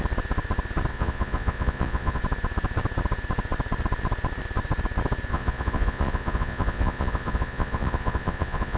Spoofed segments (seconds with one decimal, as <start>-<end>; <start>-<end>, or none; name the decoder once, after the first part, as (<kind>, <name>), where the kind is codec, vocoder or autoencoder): 0.9-2.2 (vocoder, Vocos); 5.3-8.8